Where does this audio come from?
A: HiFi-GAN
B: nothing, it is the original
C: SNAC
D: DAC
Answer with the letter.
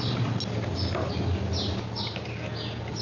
B